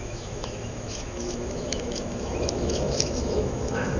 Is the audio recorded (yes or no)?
no